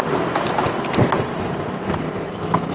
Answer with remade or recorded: remade